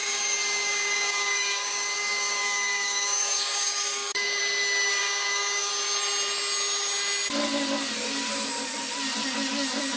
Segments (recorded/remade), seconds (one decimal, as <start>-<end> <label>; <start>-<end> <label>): 0.0-4.4 remade; 4.4-5.0 recorded; 5.0-5.7 remade; 5.7-10.0 recorded